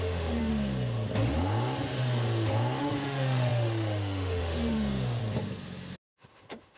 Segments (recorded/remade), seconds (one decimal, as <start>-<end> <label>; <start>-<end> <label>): 0.0-0.5 remade; 0.5-2.8 recorded; 2.8-5.2 remade; 5.2-6.0 recorded; 6.0-6.8 remade